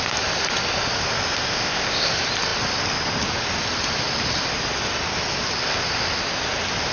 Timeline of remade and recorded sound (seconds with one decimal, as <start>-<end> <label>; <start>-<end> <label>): 0.0-1.5 recorded; 1.5-2.1 remade; 2.1-6.9 recorded